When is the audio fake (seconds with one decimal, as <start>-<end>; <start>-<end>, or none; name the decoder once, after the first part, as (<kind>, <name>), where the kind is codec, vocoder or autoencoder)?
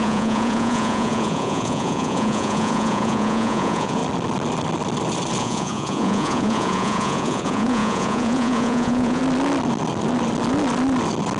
0.0-4.0 (vocoder, Vocos); 5.4-9.2